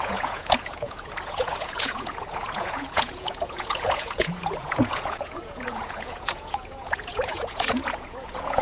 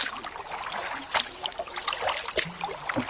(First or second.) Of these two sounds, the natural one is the second